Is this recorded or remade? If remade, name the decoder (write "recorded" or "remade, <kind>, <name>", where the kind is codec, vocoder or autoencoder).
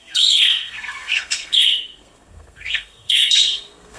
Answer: remade, codec, SNAC